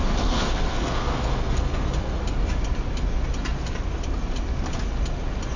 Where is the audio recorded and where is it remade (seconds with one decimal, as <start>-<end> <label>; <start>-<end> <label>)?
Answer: 0.0-2.2 remade; 2.2-5.6 recorded